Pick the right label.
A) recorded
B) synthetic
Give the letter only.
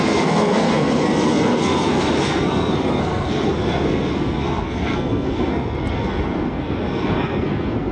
B